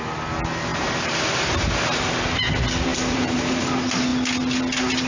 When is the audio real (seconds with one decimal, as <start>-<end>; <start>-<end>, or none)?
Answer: 0.0-0.7; 1.5-2.9; 3.6-5.1

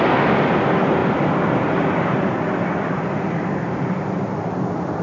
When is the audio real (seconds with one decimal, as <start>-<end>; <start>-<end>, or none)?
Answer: 0.0-5.0

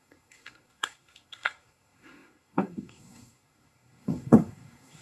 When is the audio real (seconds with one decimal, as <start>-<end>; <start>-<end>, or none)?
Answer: none

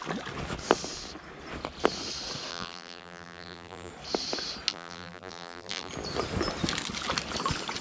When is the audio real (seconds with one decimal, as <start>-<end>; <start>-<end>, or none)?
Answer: 0.0-2.5; 3.9-4.7; 5.9-7.8

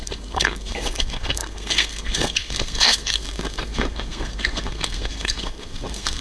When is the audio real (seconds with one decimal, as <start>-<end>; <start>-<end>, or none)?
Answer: none

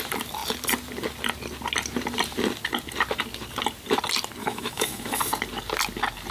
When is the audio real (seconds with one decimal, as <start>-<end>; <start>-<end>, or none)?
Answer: 0.0-4.4; 5.2-6.3